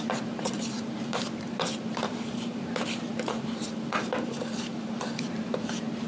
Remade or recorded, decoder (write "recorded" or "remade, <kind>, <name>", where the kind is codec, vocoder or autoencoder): remade, vocoder, BigVGAN v2